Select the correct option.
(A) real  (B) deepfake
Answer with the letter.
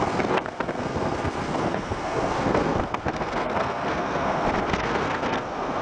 B